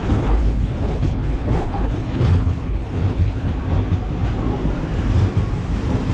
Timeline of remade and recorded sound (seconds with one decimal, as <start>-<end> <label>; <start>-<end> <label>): 0.0-3.5 remade; 3.5-6.1 recorded